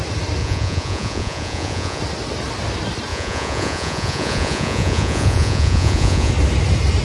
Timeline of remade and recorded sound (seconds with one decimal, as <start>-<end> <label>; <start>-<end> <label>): 0.0-0.4 recorded; 0.4-2.0 remade; 2.0-3.1 recorded; 3.1-6.3 remade; 6.3-7.0 recorded